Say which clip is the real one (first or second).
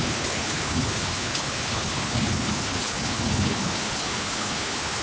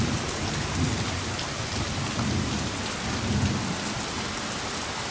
second